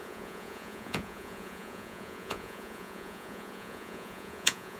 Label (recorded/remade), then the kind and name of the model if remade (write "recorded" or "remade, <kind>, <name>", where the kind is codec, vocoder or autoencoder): remade, vocoder, Vocos